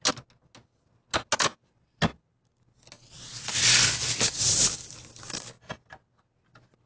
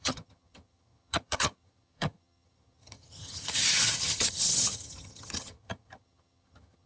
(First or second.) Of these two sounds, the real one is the first